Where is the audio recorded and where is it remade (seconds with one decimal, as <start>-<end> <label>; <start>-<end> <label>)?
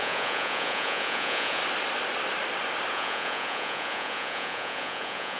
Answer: 0.0-1.6 remade; 1.6-2.9 recorded; 2.9-5.4 remade